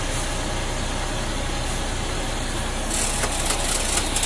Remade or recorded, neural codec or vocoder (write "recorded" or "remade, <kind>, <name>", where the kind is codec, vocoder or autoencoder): recorded